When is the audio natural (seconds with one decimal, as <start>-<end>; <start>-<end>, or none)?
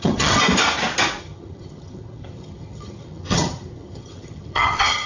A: 0.4-1.2